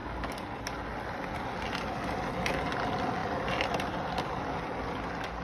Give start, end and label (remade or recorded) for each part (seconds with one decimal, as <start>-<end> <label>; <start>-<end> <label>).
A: 0.0-3.2 recorded; 3.2-4.3 remade; 4.3-5.4 recorded